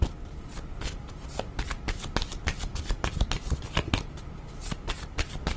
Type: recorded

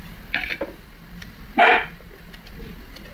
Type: remade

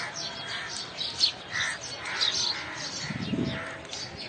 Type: recorded